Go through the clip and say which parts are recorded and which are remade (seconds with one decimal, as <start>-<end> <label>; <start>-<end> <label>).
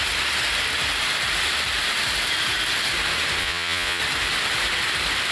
0.0-3.4 recorded; 3.4-4.0 remade; 4.0-5.3 recorded